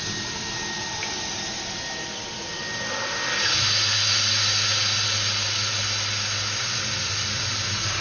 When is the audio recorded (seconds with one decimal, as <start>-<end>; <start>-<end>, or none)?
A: 0.0-8.0